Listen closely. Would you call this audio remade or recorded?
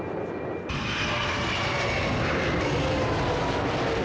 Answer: recorded